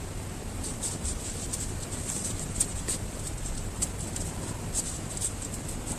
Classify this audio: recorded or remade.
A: remade